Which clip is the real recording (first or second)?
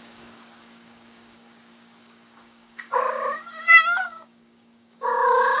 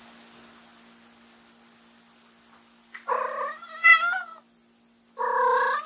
second